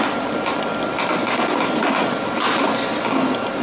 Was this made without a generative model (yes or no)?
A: yes